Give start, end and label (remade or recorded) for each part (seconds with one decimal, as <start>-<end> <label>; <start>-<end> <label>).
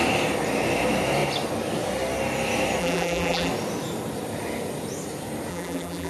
0.0-2.8 recorded; 2.8-3.5 remade; 3.5-5.5 recorded; 5.5-6.1 remade